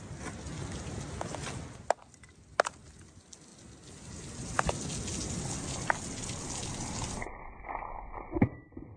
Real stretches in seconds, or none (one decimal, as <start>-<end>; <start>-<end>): 0.0-9.0